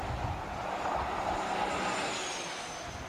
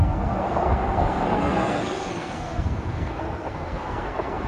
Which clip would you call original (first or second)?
first